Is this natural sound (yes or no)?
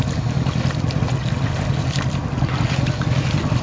yes